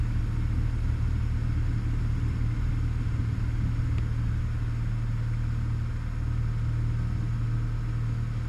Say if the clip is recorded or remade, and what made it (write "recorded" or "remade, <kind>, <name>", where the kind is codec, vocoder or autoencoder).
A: recorded